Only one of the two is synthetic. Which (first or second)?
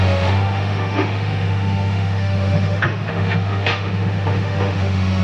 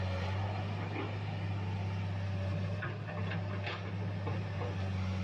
first